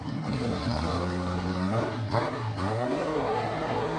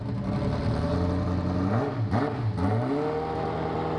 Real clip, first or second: second